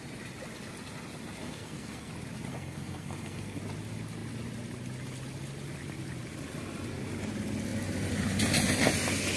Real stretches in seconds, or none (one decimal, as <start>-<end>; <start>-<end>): 0.0-1.4; 2.1-2.5; 3.6-9.4